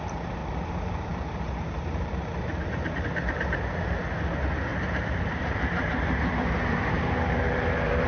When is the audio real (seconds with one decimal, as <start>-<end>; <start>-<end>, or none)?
0.0-0.4; 3.0-4.7